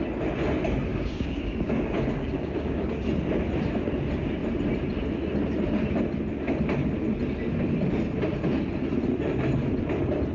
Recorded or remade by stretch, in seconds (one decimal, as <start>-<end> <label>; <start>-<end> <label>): 0.0-0.9 recorded; 0.9-3.0 remade; 3.0-10.3 recorded